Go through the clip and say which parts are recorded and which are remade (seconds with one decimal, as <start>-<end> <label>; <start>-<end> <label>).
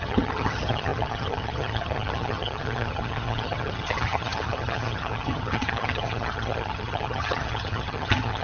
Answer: 0.0-8.4 remade